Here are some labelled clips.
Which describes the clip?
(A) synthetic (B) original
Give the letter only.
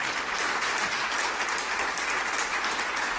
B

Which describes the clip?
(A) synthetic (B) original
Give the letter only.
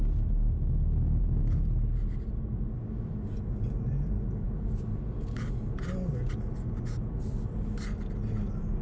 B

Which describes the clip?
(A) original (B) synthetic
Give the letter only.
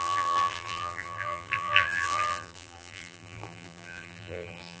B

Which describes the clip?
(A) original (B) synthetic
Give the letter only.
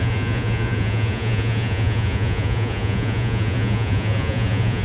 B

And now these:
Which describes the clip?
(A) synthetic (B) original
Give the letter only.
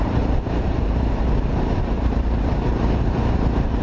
A